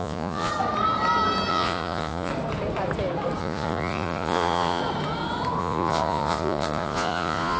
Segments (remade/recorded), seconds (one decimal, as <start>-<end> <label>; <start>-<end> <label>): 0.0-0.5 remade; 0.5-1.5 recorded; 1.5-2.3 remade; 2.3-3.4 recorded; 3.4-4.8 remade; 4.8-5.6 recorded; 5.6-7.6 remade